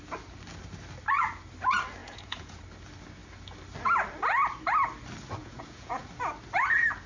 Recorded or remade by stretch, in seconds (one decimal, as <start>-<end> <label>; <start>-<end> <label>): 0.0-2.0 recorded; 2.0-2.6 remade; 2.6-5.4 recorded; 5.4-6.2 remade; 6.2-7.1 recorded

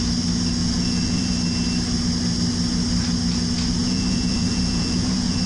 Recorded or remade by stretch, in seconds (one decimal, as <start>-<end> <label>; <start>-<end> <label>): 0.0-0.6 recorded; 0.6-1.3 remade; 1.3-3.8 recorded; 3.8-5.5 remade

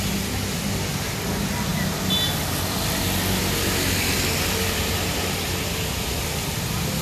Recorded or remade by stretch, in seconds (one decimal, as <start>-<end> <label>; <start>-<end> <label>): 0.0-7.0 recorded

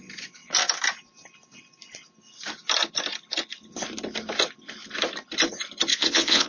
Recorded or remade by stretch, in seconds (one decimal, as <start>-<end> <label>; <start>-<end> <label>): 0.0-5.9 recorded; 5.9-6.5 remade

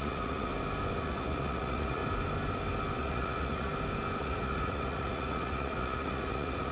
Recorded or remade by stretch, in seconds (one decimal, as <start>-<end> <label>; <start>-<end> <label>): 0.0-0.5 remade; 0.5-1.0 recorded; 1.0-2.0 remade; 2.0-3.0 recorded; 3.0-3.7 remade; 3.7-4.2 recorded; 4.2-6.7 remade

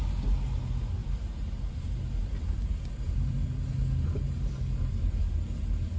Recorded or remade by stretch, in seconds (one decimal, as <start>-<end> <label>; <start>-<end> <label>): 0.0-6.0 recorded